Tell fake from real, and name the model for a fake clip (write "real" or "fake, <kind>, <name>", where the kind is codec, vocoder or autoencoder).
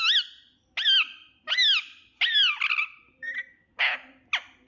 real